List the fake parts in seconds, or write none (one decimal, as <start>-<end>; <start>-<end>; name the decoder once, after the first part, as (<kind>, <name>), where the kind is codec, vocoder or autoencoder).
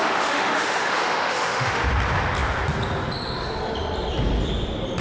0.0-1.8 (autoencoder, DAC-VAE)